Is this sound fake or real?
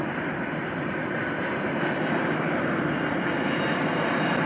fake